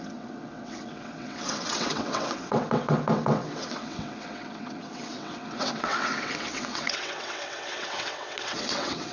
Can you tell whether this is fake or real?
fake